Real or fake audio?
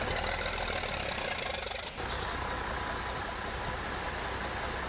real